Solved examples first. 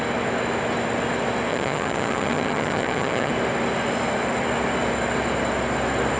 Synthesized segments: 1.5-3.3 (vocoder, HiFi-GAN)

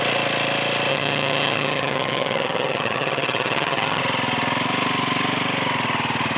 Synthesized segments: 0.9-4.0 (vocoder, HiFi-GAN)